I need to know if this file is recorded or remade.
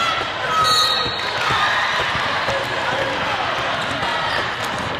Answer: recorded